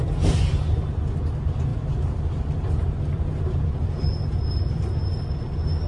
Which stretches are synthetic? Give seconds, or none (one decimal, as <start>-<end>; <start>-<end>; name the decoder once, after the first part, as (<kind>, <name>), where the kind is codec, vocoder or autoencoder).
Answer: 1.7-2.4 (vocoder, BigVGAN v2)